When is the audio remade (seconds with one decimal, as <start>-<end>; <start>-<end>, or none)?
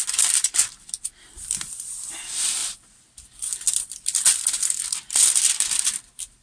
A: 0.0-6.4